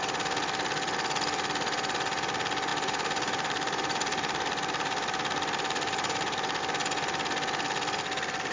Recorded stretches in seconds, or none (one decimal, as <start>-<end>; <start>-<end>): 0.0-2.7; 6.6-8.5